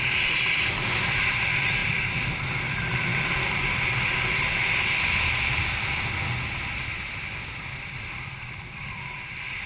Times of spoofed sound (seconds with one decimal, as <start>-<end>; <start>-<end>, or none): none